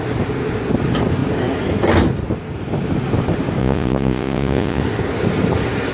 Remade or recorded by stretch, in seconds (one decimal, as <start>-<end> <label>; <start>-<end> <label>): 0.0-3.6 recorded; 3.6-4.8 remade; 4.8-5.9 recorded